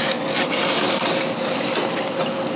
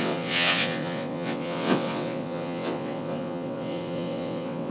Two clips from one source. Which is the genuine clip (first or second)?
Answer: first